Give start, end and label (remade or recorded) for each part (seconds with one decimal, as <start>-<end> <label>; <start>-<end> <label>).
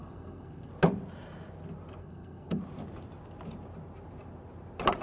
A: 0.0-0.7 remade; 0.7-2.0 recorded; 2.0-2.6 remade; 2.6-5.0 recorded